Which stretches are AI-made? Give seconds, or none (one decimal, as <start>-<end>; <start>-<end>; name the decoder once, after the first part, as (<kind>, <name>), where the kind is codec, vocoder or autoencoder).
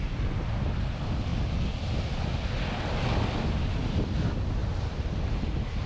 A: none